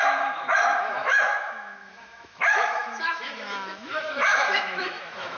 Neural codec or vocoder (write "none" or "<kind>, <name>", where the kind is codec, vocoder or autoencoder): autoencoder, DAC-VAE